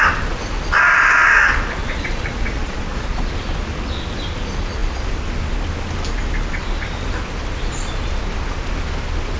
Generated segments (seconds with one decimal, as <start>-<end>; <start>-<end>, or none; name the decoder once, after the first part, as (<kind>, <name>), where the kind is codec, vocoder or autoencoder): 1.8-3.2 (vocoder, Vocos)